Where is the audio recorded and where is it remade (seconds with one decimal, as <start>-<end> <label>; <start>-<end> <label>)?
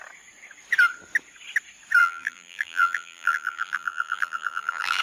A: 0.0-2.0 recorded; 2.0-5.0 remade